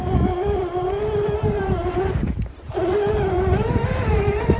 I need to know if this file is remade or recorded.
remade